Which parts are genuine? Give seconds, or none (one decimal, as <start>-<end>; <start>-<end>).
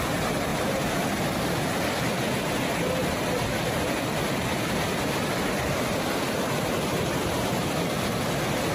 0.0-8.7